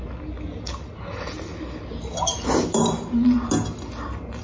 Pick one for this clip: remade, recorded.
recorded